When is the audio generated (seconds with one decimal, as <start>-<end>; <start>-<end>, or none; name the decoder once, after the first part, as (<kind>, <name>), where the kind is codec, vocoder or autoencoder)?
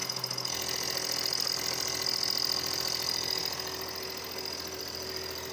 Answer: none